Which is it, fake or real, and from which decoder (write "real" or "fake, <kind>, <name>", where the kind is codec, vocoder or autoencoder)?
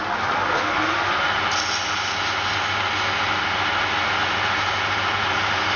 real